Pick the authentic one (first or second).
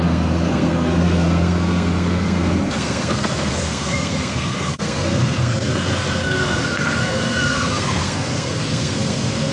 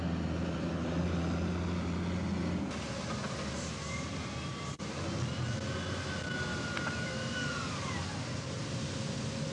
second